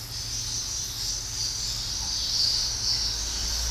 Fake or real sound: real